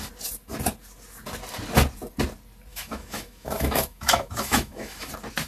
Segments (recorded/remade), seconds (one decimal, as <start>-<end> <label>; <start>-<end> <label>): 0.0-2.7 recorded; 2.7-5.1 remade; 5.1-5.5 recorded